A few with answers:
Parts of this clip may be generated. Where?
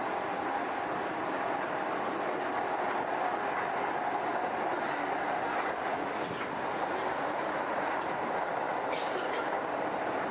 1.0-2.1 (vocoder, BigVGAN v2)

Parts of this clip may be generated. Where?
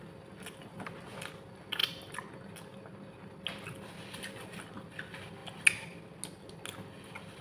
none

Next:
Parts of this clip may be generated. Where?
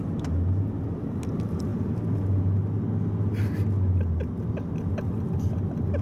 none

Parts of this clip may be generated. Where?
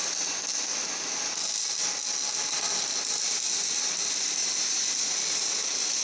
4.4-4.9 (vocoder, BigVGAN v2)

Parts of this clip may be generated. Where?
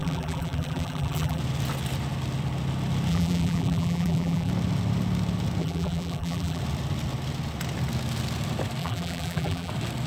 0.0-1.4 (vocoder, BigVGAN v2); 3.1-4.5; 5.6-6.6; 8.8-9.7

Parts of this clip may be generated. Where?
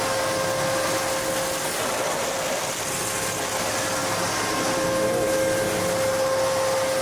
none